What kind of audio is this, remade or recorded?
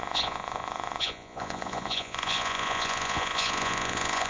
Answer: remade